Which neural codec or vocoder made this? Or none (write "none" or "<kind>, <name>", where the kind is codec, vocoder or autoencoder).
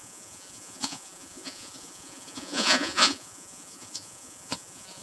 vocoder, Vocos